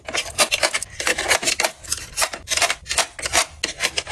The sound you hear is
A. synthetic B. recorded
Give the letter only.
B